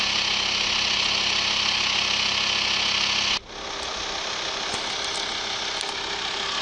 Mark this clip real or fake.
real